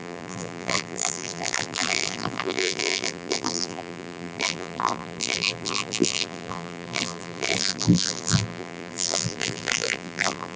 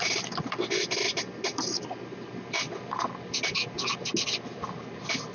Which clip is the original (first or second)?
second